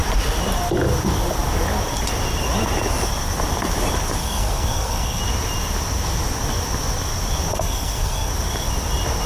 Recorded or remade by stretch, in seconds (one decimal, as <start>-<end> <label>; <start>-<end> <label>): 0.0-4.2 recorded; 4.2-5.2 remade; 5.2-7.5 recorded; 7.5-8.3 remade; 8.3-9.3 recorded